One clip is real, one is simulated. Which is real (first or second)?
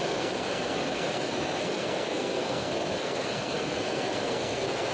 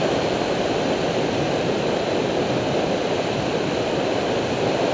second